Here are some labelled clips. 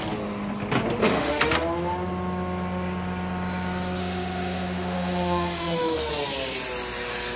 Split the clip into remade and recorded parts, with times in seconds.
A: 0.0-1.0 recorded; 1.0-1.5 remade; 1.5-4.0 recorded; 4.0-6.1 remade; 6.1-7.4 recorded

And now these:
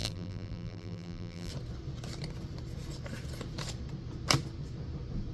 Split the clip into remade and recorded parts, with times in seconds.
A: 0.0-1.5 remade; 1.5-5.3 recorded

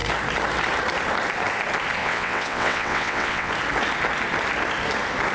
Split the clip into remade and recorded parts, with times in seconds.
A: 0.0-2.0 recorded; 2.0-3.5 remade; 3.5-5.3 recorded

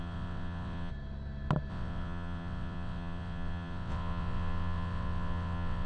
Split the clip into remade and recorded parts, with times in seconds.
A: 0.0-0.9 remade; 0.9-1.7 recorded; 1.7-5.9 remade

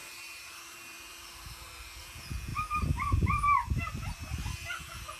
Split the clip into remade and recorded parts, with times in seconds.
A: 0.0-1.5 remade; 1.5-2.5 recorded; 2.5-4.4 remade; 4.4-5.2 recorded

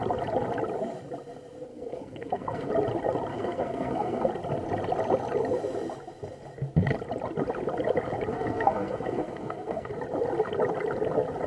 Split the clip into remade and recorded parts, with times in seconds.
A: 0.0-1.7 recorded; 1.7-2.7 remade; 2.7-3.3 recorded; 3.3-4.3 remade; 4.3-8.3 recorded; 8.3-9.9 remade; 9.9-11.5 recorded

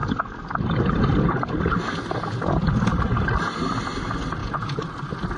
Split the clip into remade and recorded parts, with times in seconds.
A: 0.0-4.4 recorded; 4.4-4.9 remade; 4.9-5.4 recorded

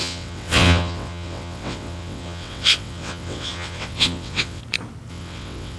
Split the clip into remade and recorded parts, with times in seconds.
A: 0.0-4.6 remade; 4.6-5.1 recorded; 5.1-5.8 remade